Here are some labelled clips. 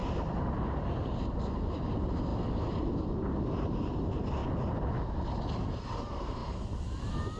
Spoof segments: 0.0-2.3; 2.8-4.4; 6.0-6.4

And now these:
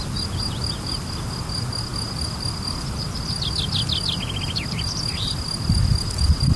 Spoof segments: none

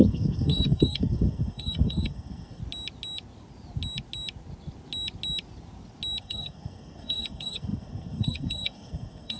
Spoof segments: 0.0-2.6; 6.2-9.4

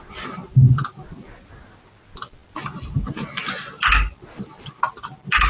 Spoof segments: none

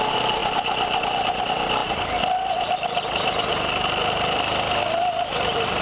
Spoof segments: none

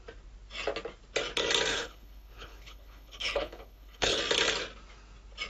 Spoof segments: 1.7-4.2

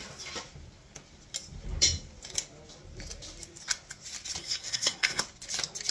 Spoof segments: 4.4-5.2